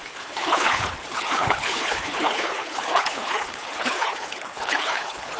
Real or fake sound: fake